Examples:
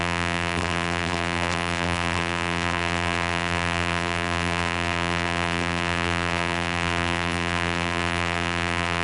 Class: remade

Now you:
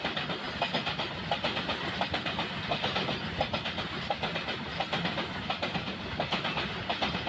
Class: recorded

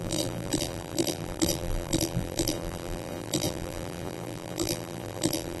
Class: remade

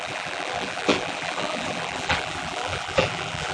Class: remade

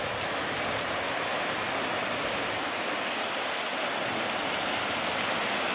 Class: recorded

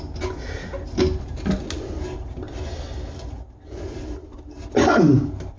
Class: recorded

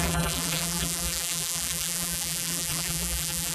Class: remade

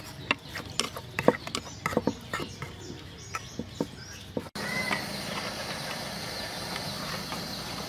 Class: recorded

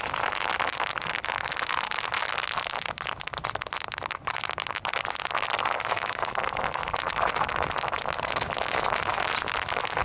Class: recorded